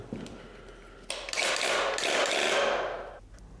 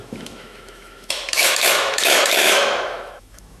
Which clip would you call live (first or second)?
first